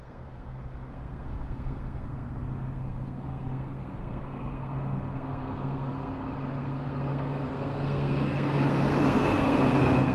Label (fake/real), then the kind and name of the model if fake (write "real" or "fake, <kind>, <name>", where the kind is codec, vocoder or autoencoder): fake, codec, SNAC